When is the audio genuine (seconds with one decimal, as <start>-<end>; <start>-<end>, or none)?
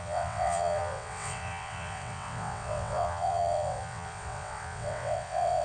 none